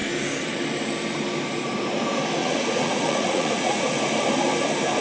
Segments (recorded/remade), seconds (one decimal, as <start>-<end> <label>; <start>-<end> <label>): 0.0-2.4 recorded; 2.4-4.0 remade; 4.0-5.0 recorded